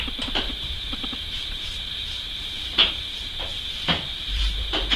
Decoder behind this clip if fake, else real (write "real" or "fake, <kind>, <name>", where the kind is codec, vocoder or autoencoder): fake, vocoder, BigVGAN v2